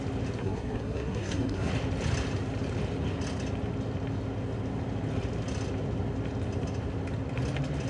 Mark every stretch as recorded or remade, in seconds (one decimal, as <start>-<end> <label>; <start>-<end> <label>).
0.0-0.4 recorded; 0.4-1.7 remade; 1.7-7.9 recorded